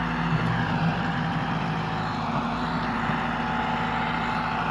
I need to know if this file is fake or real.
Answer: real